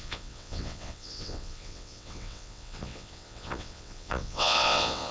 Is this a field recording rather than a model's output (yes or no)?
no